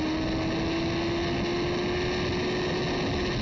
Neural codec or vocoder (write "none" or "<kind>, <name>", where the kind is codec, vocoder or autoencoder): none